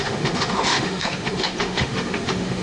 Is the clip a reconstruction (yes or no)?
yes